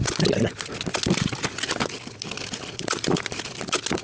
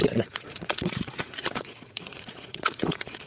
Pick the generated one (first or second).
second